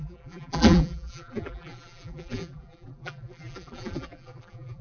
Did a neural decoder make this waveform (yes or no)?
yes